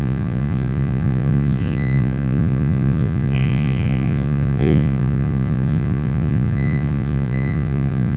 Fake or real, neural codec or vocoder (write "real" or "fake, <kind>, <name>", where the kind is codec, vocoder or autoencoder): fake, vocoder, Vocos